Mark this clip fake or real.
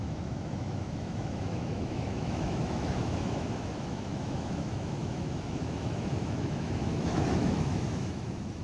fake